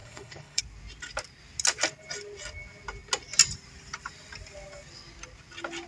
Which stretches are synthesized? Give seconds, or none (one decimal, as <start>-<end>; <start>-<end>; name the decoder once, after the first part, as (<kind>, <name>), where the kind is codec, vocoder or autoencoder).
0.0-0.6 (codec, HILCodec)